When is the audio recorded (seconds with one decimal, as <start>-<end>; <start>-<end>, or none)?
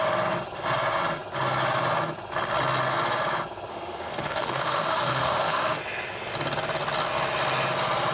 0.0-3.7; 5.8-8.1